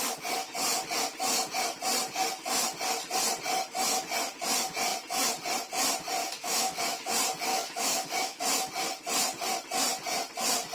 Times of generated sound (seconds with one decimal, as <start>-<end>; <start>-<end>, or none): 6.2-7.0; 7.5-8.4